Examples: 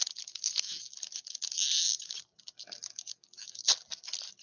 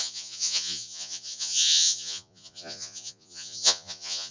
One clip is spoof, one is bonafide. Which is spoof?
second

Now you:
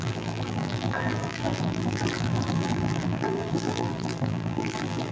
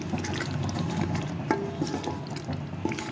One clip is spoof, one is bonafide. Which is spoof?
first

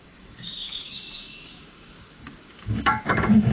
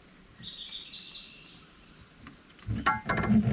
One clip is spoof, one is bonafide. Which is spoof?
first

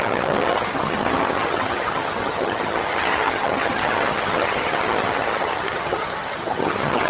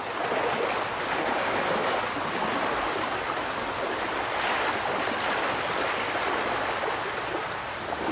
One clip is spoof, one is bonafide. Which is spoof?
first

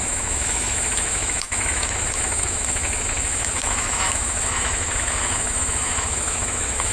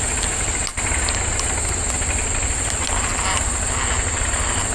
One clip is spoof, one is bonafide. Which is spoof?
first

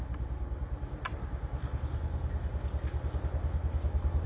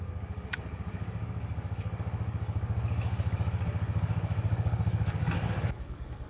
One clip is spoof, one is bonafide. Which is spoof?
second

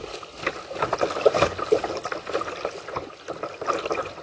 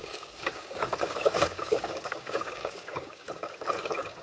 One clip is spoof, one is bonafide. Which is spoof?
second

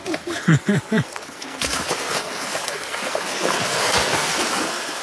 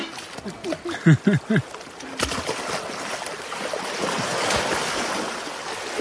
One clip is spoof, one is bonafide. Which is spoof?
first